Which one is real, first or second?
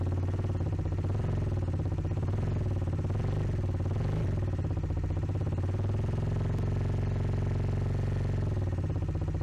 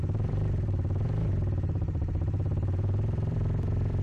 first